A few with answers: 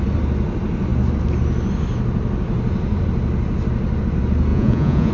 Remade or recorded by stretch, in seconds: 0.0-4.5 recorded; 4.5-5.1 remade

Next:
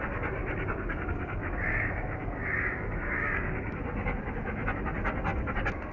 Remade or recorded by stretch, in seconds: 0.0-0.4 recorded; 0.4-3.8 remade; 3.8-5.9 recorded